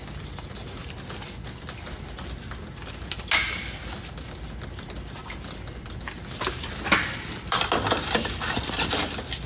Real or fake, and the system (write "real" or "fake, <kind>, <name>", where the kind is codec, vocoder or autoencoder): real